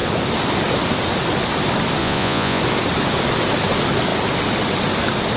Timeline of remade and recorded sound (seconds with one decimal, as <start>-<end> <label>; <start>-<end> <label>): 0.0-2.0 recorded; 2.0-2.6 remade; 2.6-5.4 recorded